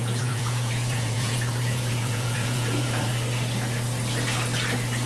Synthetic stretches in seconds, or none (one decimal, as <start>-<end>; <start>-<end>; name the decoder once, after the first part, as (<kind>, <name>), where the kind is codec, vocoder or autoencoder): 0.0-3.1 (vocoder, Vocos)